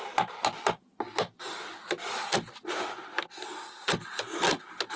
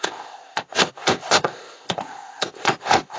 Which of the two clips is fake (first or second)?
second